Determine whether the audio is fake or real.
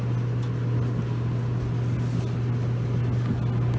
real